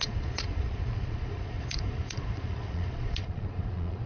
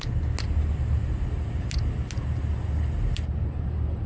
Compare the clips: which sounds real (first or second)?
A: second